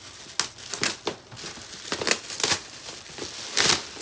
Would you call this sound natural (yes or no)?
yes